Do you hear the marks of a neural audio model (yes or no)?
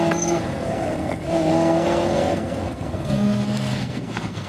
yes